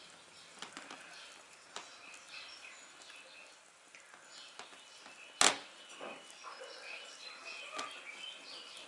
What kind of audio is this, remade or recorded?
recorded